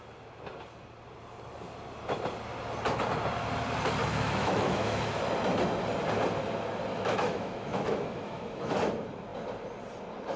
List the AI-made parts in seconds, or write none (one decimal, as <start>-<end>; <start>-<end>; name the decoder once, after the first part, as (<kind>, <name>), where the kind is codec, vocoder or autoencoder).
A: 4.0-5.2 (autoencoder, DAC-VAE); 6.9-8.8